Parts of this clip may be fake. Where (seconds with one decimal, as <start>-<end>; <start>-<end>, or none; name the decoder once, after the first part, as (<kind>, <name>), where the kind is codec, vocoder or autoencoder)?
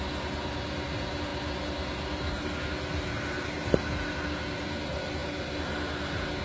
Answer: none